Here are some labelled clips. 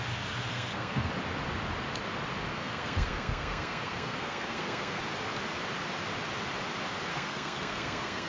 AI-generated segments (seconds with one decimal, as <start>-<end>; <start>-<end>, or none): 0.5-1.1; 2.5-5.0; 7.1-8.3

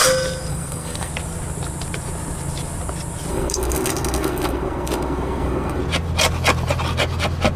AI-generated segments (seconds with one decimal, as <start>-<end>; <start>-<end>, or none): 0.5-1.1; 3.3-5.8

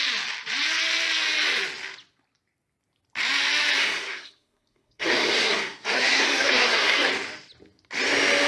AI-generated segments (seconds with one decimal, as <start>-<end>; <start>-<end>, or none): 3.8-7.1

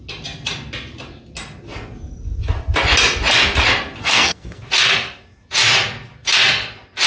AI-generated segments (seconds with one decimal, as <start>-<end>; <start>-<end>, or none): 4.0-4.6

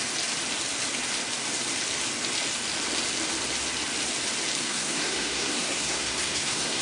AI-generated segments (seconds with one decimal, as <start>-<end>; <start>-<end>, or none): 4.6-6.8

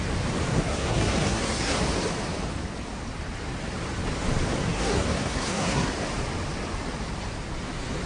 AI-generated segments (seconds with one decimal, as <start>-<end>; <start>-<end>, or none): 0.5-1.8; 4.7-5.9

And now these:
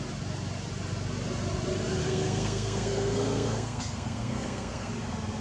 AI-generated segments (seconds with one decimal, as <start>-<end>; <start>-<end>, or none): 2.0-4.9

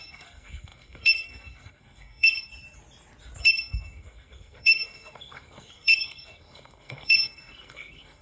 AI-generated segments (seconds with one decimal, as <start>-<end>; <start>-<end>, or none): 0.0-2.5; 3.4-8.2